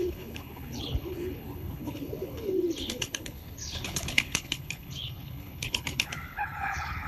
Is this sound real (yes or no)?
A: no